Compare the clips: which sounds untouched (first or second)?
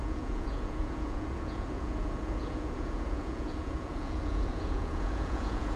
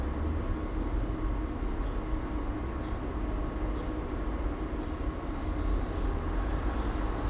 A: second